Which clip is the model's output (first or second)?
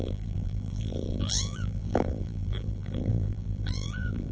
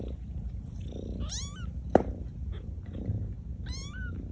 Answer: first